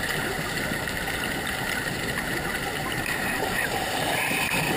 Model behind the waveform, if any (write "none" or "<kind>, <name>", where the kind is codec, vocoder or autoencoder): vocoder, BigVGAN v2